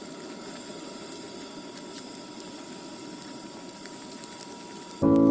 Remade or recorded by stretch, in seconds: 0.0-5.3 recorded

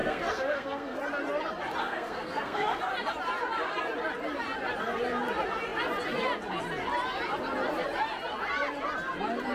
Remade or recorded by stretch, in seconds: 0.0-1.0 remade; 1.0-1.8 recorded; 1.8-2.8 remade; 2.8-9.5 recorded